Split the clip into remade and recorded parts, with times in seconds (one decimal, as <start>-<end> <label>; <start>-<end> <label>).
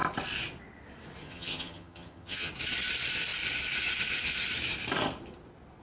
0.0-1.2 recorded; 1.2-2.5 remade; 2.5-5.8 recorded